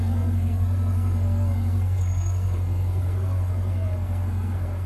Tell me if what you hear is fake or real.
fake